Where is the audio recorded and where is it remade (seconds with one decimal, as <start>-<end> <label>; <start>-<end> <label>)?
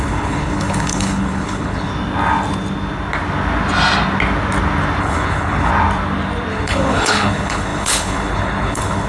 0.0-1.9 remade; 1.9-5.0 recorded; 5.0-5.7 remade; 5.7-6.5 recorded; 6.5-9.1 remade